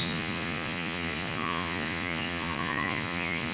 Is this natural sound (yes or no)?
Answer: no